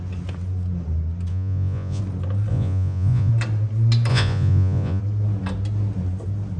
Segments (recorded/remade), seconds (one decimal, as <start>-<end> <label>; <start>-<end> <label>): 0.0-1.3 recorded; 1.3-2.0 remade; 2.0-2.5 recorded; 2.5-3.3 remade; 3.3-4.1 recorded; 4.1-5.0 remade; 5.0-6.6 recorded